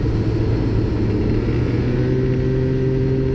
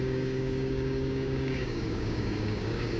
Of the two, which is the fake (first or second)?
second